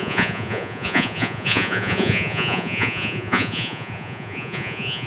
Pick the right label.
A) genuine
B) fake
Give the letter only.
B